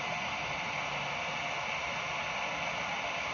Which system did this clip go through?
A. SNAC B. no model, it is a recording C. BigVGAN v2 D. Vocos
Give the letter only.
B